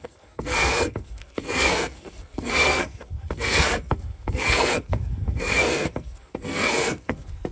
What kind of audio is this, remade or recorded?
remade